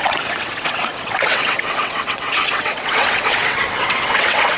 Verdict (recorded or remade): remade